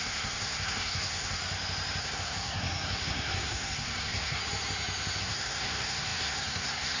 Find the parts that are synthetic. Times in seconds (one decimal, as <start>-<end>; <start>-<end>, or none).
0.0-1.4; 2.0-4.4; 5.2-7.0